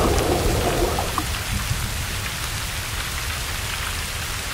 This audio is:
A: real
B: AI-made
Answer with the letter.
A